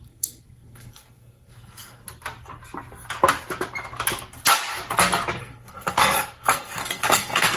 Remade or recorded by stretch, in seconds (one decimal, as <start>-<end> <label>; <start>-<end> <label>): 0.0-2.0 remade; 2.0-5.4 recorded; 5.4-7.6 remade